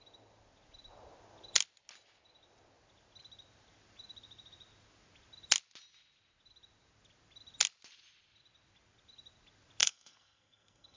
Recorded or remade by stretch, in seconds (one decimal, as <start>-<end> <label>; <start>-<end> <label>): 0.0-9.8 recorded; 9.8-11.0 remade